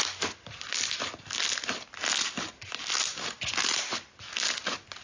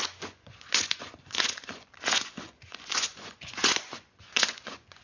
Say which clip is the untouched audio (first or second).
first